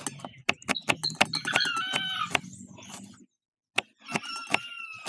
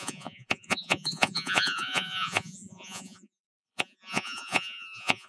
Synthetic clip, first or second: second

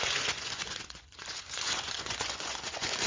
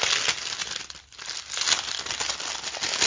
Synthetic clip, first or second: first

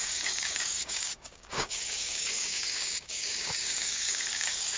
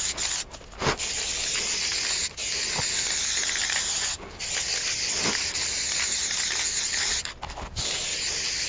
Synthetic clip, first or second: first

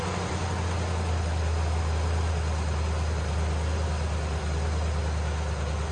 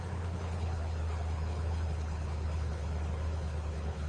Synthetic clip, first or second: second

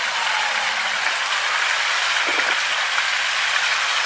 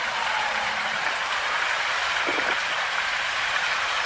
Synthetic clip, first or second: second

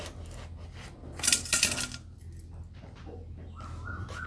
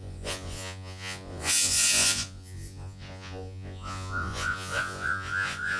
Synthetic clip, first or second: second